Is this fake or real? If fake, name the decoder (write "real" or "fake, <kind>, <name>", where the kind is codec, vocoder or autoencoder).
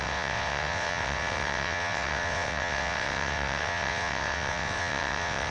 fake, vocoder, WaveNeXt